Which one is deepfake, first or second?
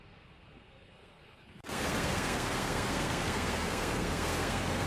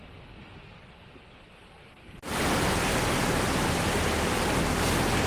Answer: first